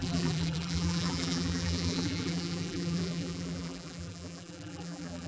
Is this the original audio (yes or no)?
no